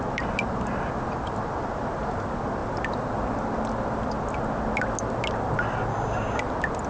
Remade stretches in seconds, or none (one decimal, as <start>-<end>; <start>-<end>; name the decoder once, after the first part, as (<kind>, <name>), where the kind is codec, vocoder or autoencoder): 5.9-6.4 (codec, DAC)